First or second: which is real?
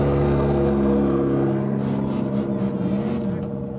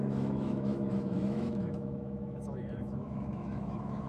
first